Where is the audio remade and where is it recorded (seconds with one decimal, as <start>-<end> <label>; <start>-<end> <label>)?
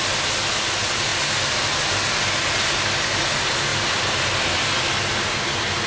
0.0-5.9 recorded